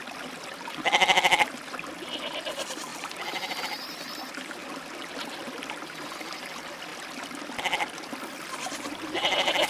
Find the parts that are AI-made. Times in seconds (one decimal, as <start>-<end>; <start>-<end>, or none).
2.9-3.6; 6.9-7.4